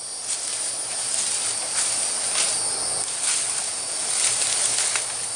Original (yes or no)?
yes